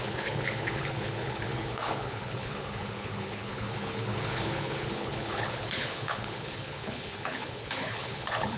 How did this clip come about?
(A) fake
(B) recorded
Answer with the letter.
A